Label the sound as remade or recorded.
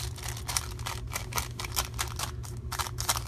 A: recorded